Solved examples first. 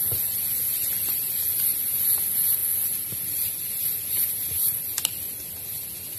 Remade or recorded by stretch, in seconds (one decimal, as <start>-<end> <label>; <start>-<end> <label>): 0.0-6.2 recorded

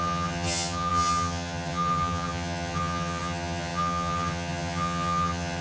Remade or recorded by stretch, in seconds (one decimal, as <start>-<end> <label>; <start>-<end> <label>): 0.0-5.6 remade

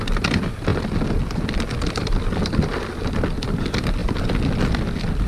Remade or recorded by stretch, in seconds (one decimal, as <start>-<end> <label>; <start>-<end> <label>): 0.0-5.3 recorded

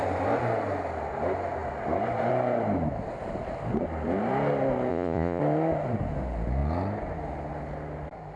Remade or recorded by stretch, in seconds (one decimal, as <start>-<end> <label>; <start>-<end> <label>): 0.0-4.9 recorded; 4.9-5.4 remade; 5.4-8.4 recorded

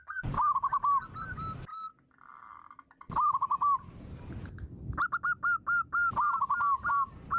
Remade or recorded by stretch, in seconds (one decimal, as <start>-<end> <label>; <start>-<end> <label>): 0.0-7.4 recorded

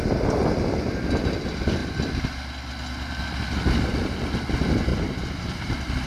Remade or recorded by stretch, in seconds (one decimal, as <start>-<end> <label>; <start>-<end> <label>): 0.0-4.9 recorded; 4.9-6.1 remade